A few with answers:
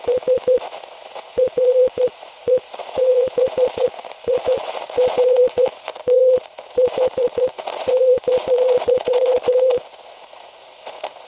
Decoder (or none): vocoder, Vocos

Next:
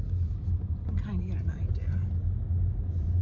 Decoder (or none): none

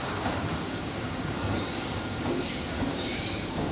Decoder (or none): codec, DAC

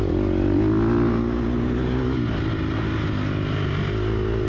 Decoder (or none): none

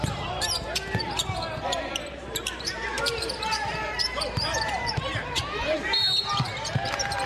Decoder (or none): vocoder, BigVGAN v2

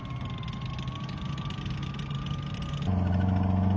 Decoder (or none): none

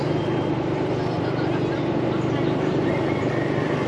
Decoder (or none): none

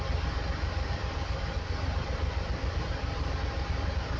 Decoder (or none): none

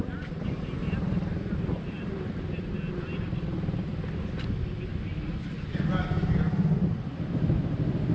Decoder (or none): none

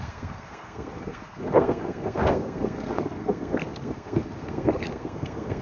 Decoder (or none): codec, SNAC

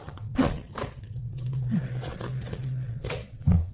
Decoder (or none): vocoder, Vocos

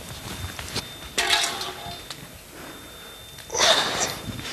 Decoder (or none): none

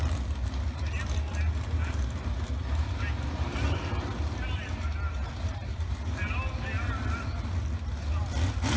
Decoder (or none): none